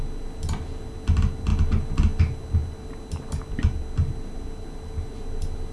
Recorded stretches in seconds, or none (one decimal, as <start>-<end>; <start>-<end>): 0.0-5.7